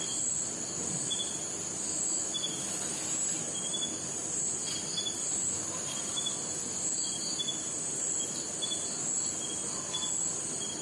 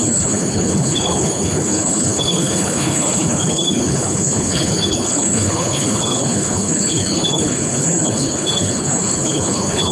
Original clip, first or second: first